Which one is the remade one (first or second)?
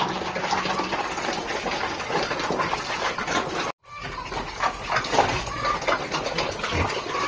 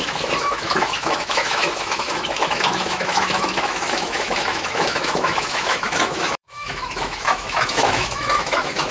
second